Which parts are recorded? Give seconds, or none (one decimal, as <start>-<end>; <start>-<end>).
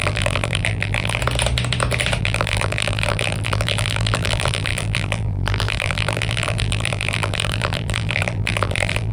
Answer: 1.2-2.2